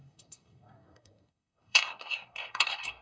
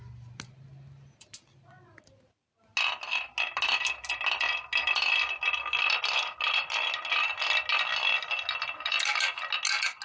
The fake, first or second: first